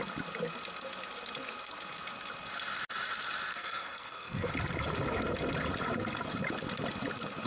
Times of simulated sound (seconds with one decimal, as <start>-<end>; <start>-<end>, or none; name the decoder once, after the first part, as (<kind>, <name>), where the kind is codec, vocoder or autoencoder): 3.5-4.5 (codec, SNAC)